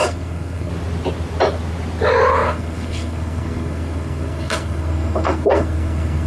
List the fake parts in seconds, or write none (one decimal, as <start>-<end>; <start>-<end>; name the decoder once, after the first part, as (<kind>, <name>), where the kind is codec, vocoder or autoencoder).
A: 0.0-0.7 (codec, SNAC); 2.3-6.3